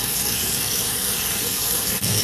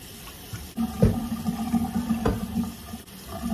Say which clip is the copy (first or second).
first